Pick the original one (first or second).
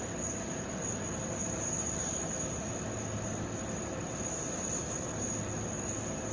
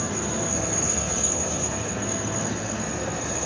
first